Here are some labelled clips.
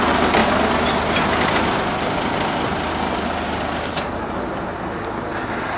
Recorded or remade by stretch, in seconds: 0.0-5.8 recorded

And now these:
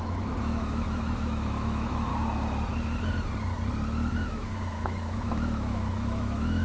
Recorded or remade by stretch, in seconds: 0.0-2.1 remade; 2.1-4.1 recorded; 4.1-6.6 remade

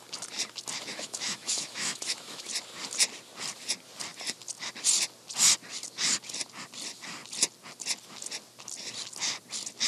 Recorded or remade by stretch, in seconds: 0.0-0.9 recorded; 0.9-2.5 remade; 2.5-9.9 recorded

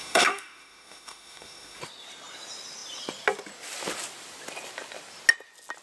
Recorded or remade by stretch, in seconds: 0.0-1.8 remade; 1.8-5.8 recorded

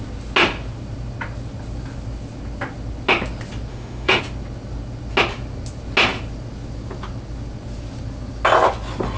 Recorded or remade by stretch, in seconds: 0.0-3.7 recorded; 3.7-4.2 remade; 4.2-9.2 recorded

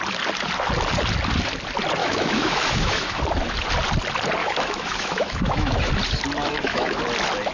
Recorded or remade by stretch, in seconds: 0.0-2.0 recorded; 2.0-3.2 remade; 3.2-4.4 recorded; 4.4-5.9 remade; 5.9-6.4 recorded; 6.4-7.0 remade; 7.0-7.5 recorded

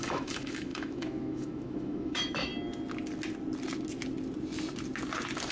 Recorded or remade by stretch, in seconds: 0.0-2.5 remade; 2.5-5.5 recorded

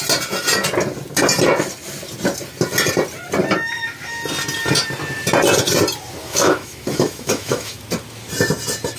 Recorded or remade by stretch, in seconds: 0.0-6.2 recorded; 6.2-7.8 remade; 7.8-9.0 recorded